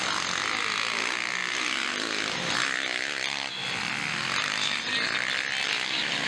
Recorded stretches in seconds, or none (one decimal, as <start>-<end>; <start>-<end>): 0.0-6.3